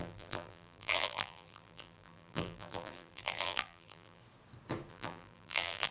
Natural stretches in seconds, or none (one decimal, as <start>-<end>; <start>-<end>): 4.2-4.9